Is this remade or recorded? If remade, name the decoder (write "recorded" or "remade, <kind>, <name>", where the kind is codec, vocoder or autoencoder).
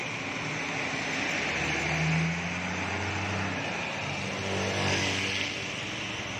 recorded